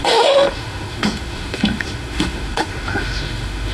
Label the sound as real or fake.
fake